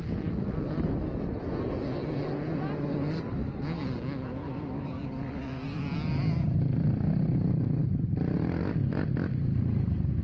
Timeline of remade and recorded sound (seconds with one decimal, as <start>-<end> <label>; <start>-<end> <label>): 0.0-10.2 recorded